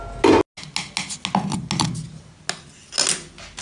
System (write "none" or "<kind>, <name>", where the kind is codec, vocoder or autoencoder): none